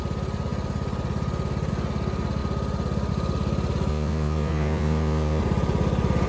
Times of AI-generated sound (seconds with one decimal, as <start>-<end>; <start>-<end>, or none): 3.9-5.4